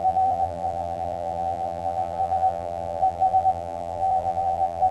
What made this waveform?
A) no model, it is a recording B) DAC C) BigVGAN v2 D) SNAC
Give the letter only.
C